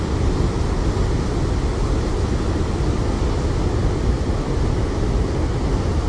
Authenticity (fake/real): real